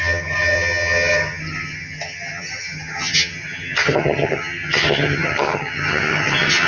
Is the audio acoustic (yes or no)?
no